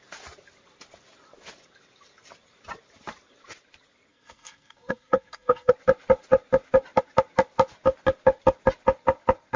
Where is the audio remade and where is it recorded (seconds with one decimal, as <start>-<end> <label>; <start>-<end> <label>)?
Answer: 0.0-4.1 recorded; 4.1-5.7 remade; 5.7-9.6 recorded